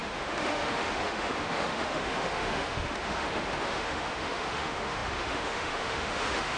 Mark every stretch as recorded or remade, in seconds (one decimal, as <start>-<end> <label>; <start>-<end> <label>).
0.0-6.6 remade